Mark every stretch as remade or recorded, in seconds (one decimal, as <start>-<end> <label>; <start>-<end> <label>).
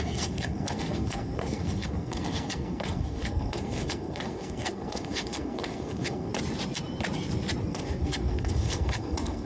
0.0-6.3 remade; 6.3-7.7 recorded; 7.7-9.5 remade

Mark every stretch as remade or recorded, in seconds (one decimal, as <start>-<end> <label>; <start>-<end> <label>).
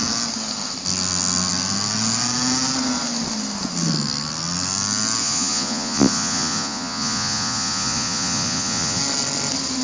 0.0-5.2 recorded; 5.2-9.0 remade; 9.0-9.8 recorded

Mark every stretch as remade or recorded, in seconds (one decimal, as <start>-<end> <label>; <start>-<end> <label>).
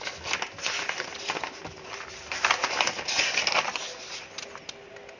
0.0-5.2 recorded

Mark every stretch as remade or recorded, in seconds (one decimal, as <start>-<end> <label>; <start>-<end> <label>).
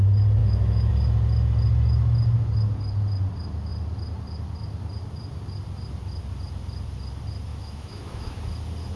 0.0-0.4 recorded; 0.4-0.9 remade; 0.9-7.5 recorded; 7.5-8.4 remade; 8.4-9.0 recorded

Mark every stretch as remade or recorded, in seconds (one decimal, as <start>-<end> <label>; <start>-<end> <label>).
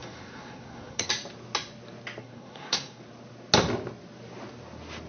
0.0-1.1 remade; 1.1-2.2 recorded; 2.2-3.0 remade; 3.0-5.1 recorded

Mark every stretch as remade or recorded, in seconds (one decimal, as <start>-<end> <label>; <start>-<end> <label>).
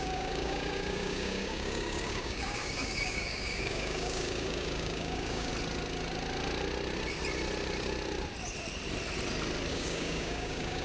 0.0-5.5 remade; 5.5-9.7 recorded; 9.7-10.8 remade